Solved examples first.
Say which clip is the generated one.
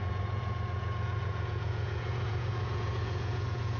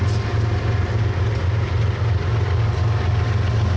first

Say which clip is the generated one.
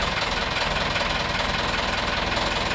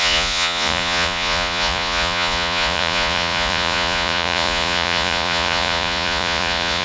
second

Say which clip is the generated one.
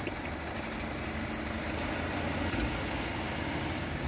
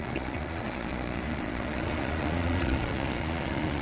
second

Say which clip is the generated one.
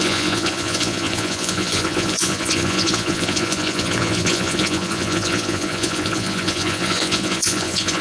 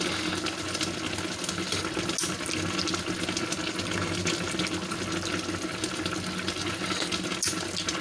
first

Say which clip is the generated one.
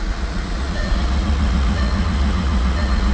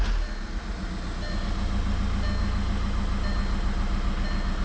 first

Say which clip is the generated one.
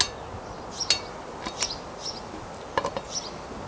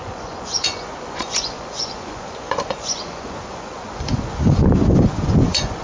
second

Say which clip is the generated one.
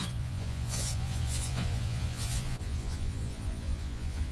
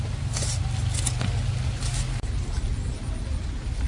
first